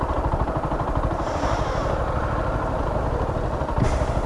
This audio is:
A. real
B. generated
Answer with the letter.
B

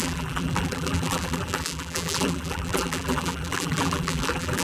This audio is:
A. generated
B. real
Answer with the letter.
A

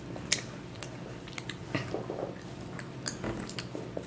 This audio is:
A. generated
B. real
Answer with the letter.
B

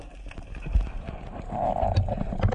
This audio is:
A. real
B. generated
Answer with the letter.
B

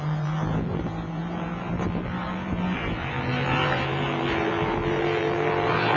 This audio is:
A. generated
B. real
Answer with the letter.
A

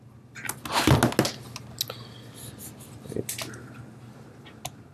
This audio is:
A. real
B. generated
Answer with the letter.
A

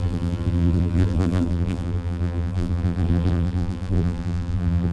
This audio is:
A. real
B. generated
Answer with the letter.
B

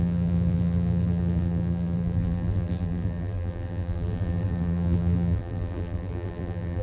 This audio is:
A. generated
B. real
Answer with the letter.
A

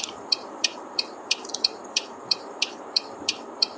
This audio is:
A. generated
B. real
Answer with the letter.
A